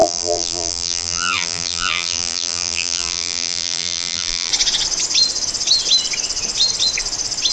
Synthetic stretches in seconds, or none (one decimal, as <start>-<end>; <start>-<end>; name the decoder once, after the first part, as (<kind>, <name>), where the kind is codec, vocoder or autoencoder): 0.0-4.5 (vocoder, BigVGAN v2)